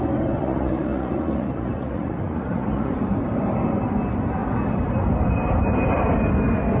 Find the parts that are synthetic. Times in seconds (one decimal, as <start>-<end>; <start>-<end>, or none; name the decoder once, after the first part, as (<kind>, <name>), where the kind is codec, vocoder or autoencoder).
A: 0.4-2.9 (vocoder, Vocos)